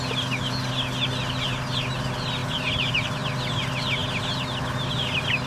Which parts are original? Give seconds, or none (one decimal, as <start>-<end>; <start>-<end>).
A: 0.0-5.5